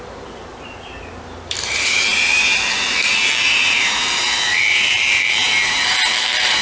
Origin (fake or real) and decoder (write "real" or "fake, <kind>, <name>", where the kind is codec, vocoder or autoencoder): fake, vocoder, BigVGAN v2